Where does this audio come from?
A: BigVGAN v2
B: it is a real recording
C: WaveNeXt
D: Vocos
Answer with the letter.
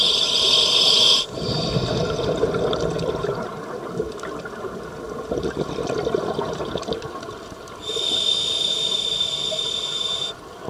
A